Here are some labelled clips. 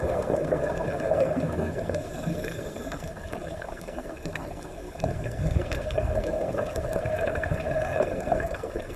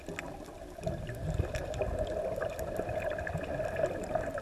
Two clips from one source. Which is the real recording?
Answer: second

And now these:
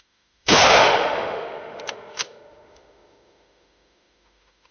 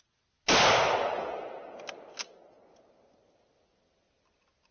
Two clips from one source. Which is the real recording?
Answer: second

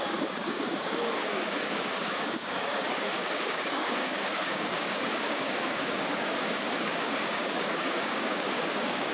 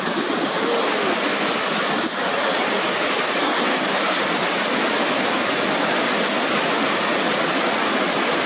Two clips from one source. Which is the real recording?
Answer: second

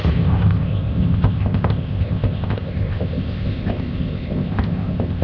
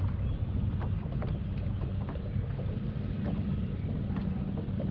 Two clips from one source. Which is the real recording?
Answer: second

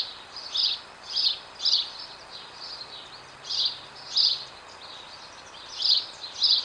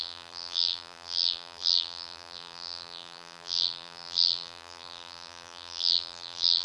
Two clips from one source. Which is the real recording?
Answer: first